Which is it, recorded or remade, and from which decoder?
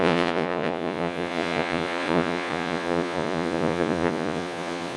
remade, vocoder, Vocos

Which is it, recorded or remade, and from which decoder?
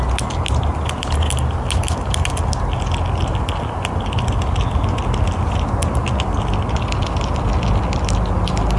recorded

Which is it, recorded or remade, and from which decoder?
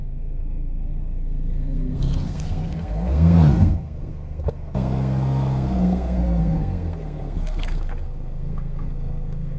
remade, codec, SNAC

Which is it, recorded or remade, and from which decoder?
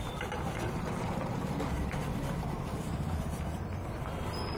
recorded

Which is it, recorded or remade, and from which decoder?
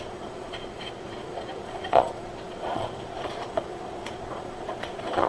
remade, vocoder, Vocos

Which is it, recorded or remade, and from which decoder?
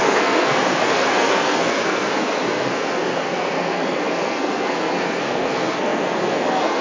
remade, codec, SNAC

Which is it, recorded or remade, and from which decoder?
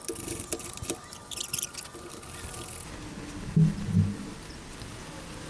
recorded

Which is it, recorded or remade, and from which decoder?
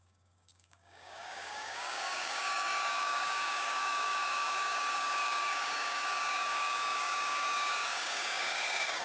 remade, codec, DAC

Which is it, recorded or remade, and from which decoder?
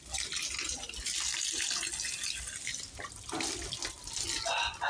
recorded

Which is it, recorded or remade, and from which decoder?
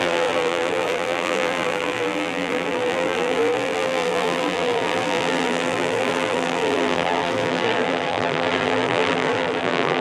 remade, vocoder, BigVGAN v2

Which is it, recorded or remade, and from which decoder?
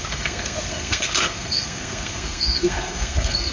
remade, codec, SNAC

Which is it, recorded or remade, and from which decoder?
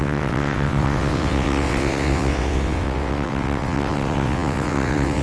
remade, vocoder, WaveNeXt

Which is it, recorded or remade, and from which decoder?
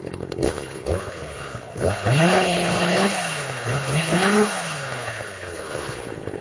remade, codec, HILCodec